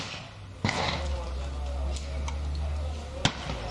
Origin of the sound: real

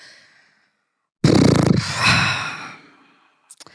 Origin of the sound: real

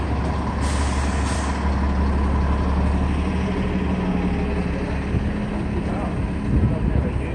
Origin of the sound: real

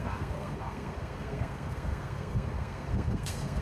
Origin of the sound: fake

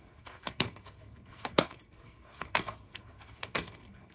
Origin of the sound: fake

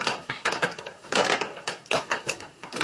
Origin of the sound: fake